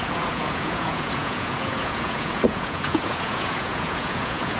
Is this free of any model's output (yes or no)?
no